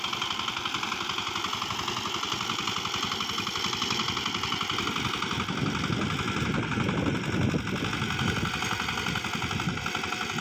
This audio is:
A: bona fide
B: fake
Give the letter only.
A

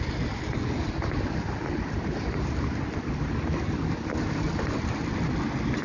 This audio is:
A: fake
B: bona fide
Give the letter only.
B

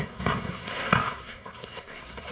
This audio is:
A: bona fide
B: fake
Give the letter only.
B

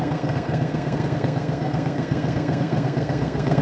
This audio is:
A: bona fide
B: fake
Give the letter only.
B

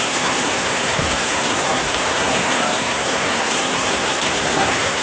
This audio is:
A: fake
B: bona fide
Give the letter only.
A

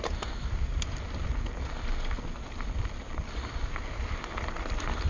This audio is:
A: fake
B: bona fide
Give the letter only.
B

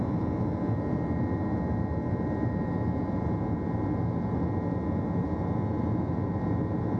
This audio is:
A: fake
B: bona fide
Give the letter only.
B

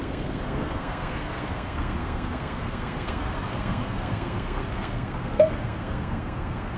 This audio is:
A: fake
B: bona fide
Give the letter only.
A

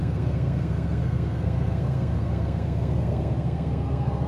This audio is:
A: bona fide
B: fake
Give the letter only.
B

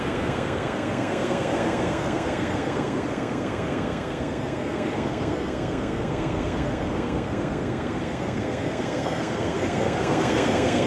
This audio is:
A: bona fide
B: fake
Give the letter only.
B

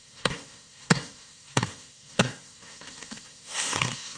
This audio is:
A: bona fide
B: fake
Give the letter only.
B